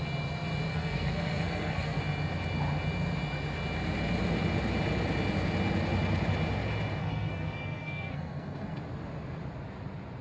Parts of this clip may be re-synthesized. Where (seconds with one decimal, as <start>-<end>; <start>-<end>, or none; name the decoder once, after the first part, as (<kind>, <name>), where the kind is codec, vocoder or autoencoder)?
0.7-2.0 (codec, SNAC); 7.0-8.8